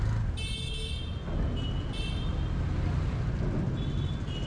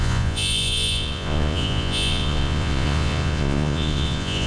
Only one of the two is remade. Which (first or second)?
second